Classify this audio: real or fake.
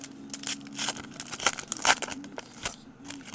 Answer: real